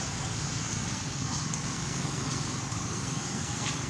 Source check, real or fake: fake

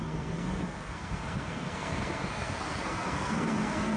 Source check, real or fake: fake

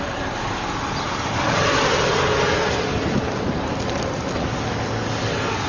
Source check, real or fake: real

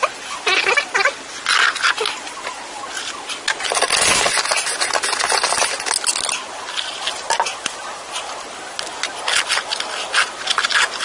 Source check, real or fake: real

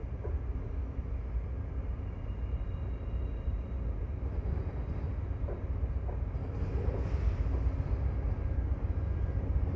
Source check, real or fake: real